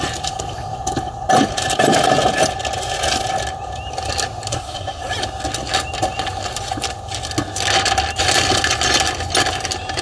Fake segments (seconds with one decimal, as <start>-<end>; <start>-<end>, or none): 4.5-5.0